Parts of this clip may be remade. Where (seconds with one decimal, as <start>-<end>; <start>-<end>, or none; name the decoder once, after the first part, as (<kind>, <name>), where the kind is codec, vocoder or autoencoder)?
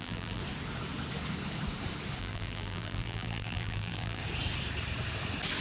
0.0-0.4 (vocoder, BigVGAN v2); 2.2-4.2